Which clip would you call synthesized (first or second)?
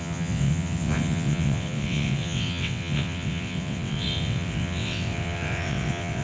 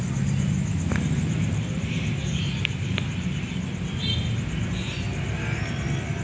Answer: first